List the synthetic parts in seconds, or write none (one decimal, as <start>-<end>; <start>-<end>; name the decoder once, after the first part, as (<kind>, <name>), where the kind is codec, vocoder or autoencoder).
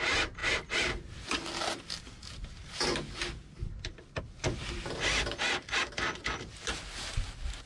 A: none